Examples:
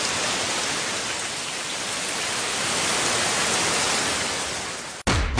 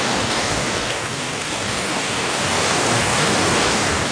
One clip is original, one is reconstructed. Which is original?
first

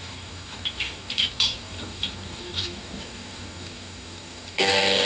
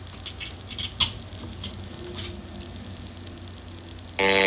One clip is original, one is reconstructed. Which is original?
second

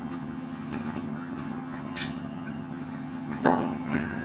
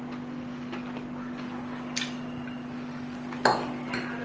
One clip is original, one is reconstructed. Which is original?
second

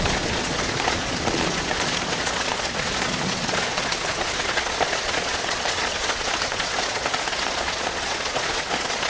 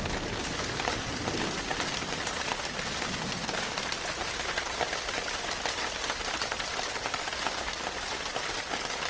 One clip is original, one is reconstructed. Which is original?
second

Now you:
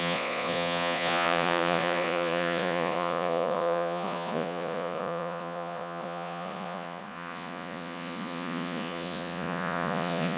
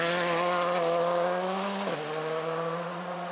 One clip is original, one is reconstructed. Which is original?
second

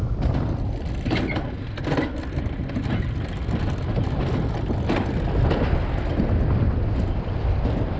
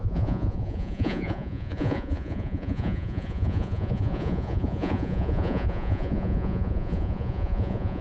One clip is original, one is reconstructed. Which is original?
first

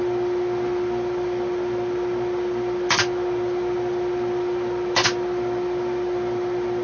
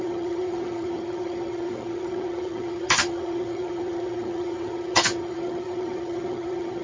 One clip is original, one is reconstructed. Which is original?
first